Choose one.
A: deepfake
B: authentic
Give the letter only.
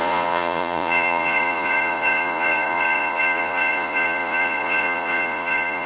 A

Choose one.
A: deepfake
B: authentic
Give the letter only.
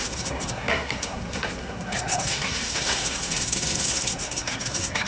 A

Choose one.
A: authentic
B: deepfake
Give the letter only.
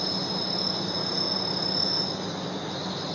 A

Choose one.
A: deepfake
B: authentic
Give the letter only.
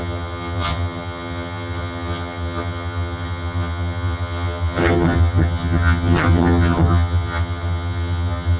A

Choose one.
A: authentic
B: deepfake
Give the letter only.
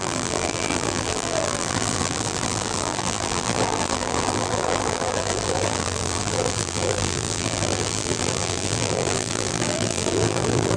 B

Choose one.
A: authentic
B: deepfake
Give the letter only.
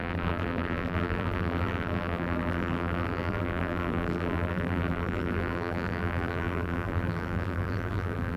B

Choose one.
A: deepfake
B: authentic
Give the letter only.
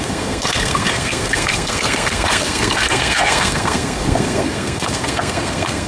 A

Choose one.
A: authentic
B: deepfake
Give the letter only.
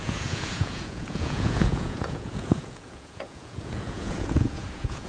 B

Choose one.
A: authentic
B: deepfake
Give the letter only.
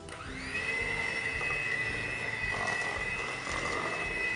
A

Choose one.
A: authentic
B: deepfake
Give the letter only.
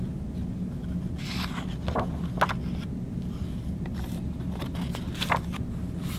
A